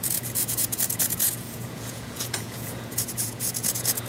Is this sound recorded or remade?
remade